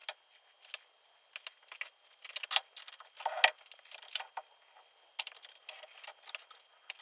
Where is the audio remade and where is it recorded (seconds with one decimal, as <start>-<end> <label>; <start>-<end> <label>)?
0.0-7.0 recorded